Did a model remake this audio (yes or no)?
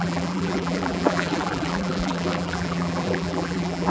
yes